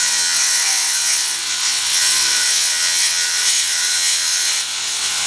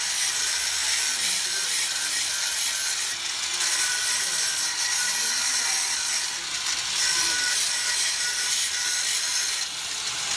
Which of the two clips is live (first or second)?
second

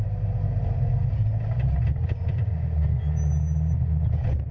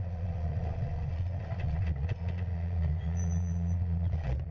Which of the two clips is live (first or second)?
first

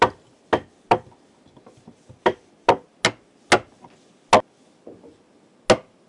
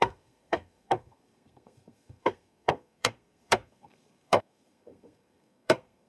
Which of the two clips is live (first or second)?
first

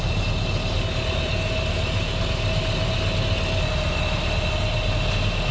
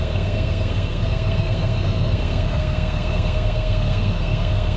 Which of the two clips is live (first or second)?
first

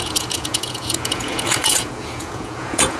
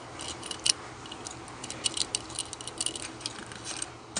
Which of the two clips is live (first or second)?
second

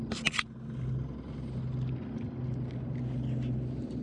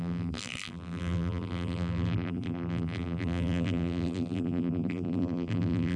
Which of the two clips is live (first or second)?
first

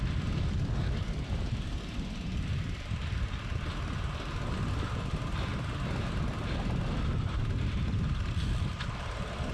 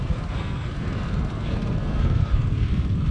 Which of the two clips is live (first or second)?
first